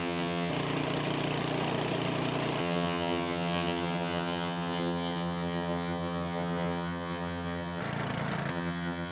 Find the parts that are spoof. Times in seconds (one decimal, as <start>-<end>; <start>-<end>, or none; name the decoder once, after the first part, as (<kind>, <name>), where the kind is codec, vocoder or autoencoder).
0.0-0.5 (vocoder, HiFi-GAN); 2.6-7.8; 8.5-9.1